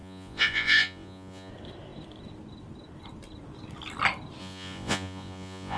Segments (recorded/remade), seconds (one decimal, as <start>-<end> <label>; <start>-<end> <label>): 0.0-1.5 remade; 1.5-4.4 recorded; 4.4-5.8 remade